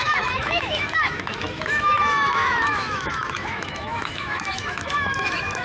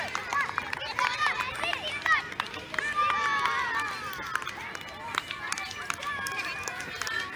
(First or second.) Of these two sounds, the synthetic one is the first